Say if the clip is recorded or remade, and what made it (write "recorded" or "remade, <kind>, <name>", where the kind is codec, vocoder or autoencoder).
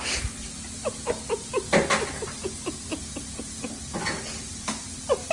recorded